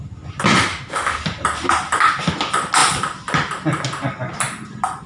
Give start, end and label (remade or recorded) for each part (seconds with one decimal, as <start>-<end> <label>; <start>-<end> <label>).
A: 0.0-0.7 recorded; 0.7-1.2 remade; 1.2-5.1 recorded